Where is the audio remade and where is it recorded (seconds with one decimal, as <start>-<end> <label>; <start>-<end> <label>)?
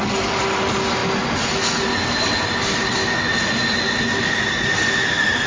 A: 0.0-5.5 recorded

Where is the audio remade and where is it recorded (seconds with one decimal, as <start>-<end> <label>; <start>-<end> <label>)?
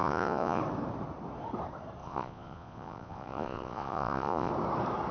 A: 0.0-0.6 remade; 0.6-2.0 recorded; 2.0-4.5 remade; 4.5-5.1 recorded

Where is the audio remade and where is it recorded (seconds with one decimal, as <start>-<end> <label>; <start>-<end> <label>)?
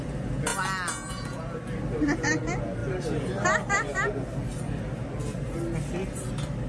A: 0.0-6.7 recorded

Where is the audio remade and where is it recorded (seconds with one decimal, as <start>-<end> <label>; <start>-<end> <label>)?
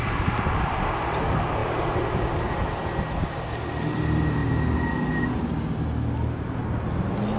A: 0.0-7.4 recorded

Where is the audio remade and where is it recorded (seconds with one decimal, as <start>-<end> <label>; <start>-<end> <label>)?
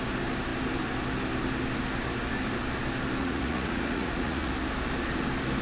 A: 0.0-3.2 recorded; 3.2-4.5 remade; 4.5-5.6 recorded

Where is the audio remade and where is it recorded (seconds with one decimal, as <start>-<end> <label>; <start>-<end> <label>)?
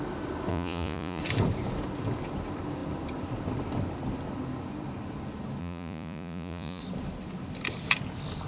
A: 0.0-0.5 recorded; 0.5-1.2 remade; 1.2-5.6 recorded; 5.6-6.8 remade; 6.8-8.5 recorded